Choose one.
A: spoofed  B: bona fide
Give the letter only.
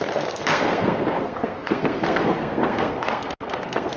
A